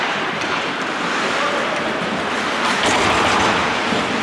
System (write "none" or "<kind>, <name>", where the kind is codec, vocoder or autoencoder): vocoder, BigVGAN v2